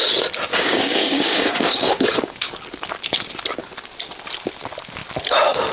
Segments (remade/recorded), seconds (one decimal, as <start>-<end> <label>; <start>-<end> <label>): 0.0-0.5 recorded; 0.5-2.5 remade; 2.5-5.7 recorded